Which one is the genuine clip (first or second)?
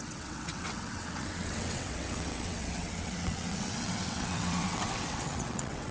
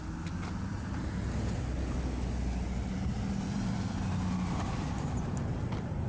second